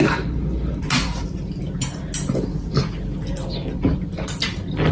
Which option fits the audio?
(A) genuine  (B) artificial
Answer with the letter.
A